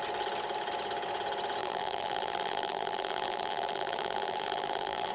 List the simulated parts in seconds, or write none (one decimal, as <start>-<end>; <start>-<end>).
1.6-5.1